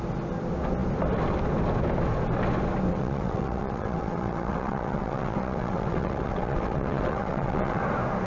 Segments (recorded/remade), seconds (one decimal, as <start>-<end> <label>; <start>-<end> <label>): 0.0-2.9 recorded; 2.9-7.8 remade; 7.8-8.3 recorded